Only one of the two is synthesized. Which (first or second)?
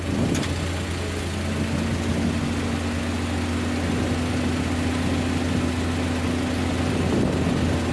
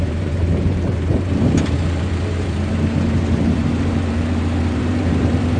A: second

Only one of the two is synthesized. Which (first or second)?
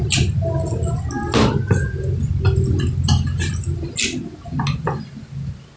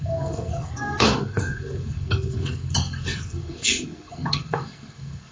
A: second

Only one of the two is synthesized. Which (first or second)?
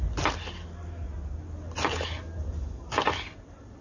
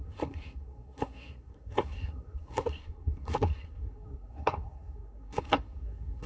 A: second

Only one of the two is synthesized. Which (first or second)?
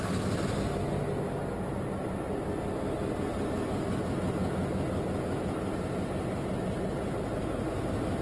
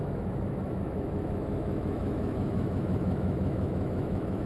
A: second